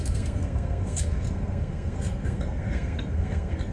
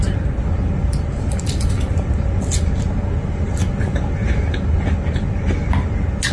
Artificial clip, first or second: first